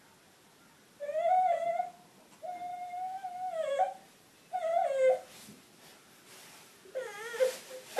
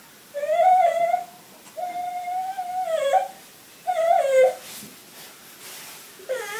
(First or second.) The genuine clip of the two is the first